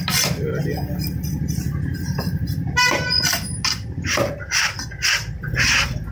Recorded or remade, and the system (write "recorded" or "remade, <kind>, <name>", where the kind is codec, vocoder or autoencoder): recorded